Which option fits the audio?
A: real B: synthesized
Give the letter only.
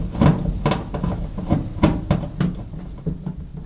A